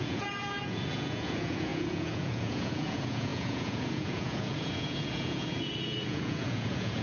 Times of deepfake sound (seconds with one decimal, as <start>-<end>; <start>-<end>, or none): 0.0-7.0